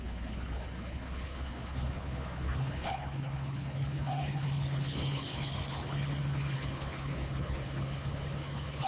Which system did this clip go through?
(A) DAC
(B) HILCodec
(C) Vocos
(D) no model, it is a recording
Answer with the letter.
B